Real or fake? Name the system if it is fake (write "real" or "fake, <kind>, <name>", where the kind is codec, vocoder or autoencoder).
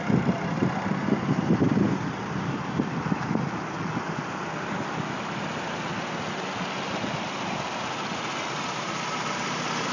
real